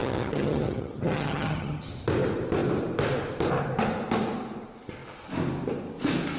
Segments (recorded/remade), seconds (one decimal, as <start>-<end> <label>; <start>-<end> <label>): 0.0-1.9 remade; 1.9-6.4 recorded